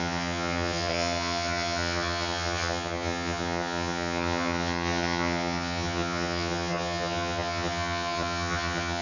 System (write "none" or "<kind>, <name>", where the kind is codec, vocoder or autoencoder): vocoder, HiFi-GAN